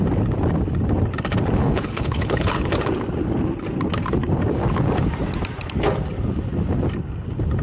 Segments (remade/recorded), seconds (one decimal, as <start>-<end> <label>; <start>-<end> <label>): 0.0-1.6 recorded; 1.6-2.7 remade; 2.7-7.6 recorded

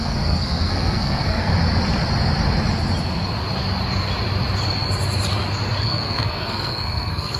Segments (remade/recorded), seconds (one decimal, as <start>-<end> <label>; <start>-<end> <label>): 0.0-1.5 remade; 1.5-5.8 recorded; 5.8-7.4 remade

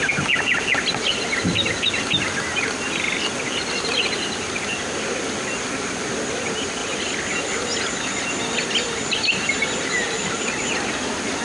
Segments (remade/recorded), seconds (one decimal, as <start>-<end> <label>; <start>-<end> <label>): 0.0-11.4 recorded

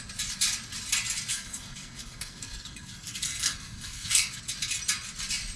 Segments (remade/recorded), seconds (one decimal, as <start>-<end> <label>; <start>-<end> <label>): 0.0-1.3 recorded; 1.3-4.4 remade; 4.4-5.6 recorded

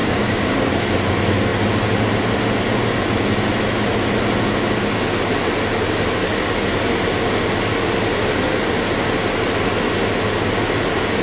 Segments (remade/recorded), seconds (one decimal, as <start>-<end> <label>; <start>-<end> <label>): 0.0-0.7 remade; 0.7-11.2 recorded